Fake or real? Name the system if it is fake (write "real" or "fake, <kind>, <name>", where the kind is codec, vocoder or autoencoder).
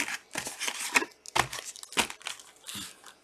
real